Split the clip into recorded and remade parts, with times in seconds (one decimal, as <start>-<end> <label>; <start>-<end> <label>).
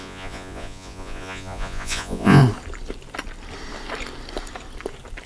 0.0-2.4 remade; 2.4-5.3 recorded